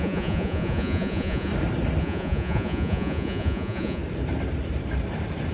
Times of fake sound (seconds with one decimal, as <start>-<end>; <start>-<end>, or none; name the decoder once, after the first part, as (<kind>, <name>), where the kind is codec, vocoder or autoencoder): 0.0-1.5 (vocoder, Vocos); 2.0-4.0